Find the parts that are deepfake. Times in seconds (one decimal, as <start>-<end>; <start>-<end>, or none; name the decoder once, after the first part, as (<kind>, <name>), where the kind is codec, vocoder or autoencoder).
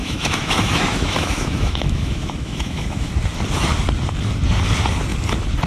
0.0-3.1 (autoencoder, DAC-VAE)